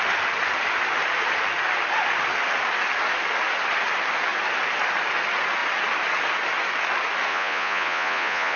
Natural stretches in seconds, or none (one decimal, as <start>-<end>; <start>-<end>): 0.0-7.3